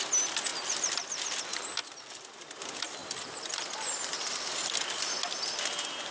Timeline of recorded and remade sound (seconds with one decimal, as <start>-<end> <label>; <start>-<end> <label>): 0.0-1.8 recorded; 1.8-2.6 remade; 2.6-3.0 recorded; 3.0-5.0 remade; 5.0-6.1 recorded